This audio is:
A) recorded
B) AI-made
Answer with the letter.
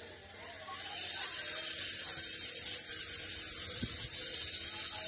A